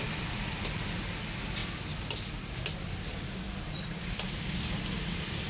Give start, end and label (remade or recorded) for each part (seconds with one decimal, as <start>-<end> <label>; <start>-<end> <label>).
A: 0.0-5.5 recorded